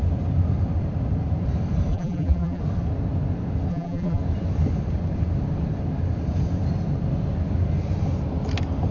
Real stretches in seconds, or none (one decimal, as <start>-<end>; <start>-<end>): 0.0-1.9; 2.6-3.7; 4.2-8.9